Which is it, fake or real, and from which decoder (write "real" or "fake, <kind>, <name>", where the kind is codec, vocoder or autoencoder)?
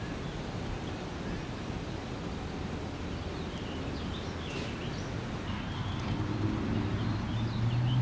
real